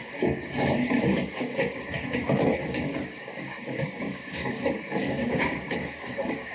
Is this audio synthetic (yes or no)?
yes